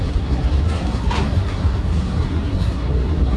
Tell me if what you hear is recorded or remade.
remade